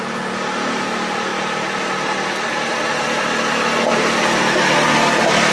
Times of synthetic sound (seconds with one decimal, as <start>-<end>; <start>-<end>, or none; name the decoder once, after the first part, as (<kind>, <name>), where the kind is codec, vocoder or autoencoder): none